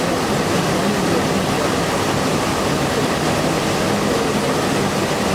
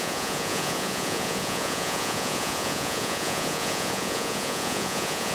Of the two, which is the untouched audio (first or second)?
first